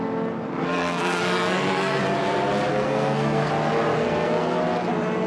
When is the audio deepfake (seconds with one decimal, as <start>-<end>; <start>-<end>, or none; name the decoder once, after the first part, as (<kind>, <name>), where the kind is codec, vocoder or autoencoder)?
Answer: 0.6-2.0 (codec, SNAC); 2.7-3.5; 3.9-4.6